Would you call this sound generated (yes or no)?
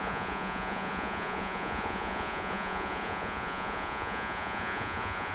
yes